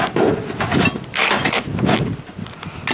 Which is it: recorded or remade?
recorded